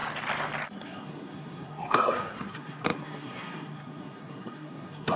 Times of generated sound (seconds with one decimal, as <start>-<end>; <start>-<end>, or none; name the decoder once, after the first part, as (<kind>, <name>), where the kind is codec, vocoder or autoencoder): 0.7-5.2 (codec, SNAC)